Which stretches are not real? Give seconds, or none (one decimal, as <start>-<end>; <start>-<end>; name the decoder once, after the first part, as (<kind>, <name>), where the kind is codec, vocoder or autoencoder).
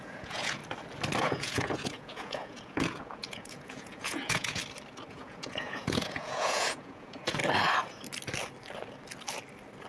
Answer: 0.0-0.6 (vocoder, Vocos); 1.2-4.6; 5.1-7.4